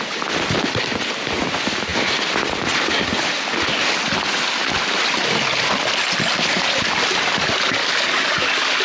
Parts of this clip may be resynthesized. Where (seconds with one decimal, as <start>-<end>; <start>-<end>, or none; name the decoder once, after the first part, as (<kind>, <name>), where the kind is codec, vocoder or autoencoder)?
7.8-8.8 (codec, DAC)